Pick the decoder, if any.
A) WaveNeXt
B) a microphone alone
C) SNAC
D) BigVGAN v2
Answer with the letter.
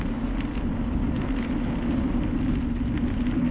B